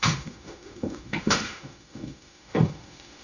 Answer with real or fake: fake